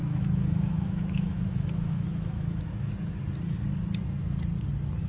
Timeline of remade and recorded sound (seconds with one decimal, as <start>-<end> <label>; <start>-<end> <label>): 0.0-2.9 remade; 2.9-5.1 recorded